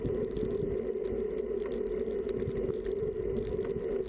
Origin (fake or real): real